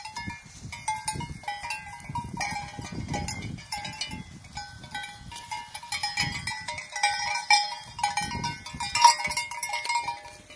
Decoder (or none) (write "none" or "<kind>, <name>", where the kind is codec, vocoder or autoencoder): none